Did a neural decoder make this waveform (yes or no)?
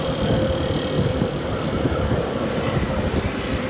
no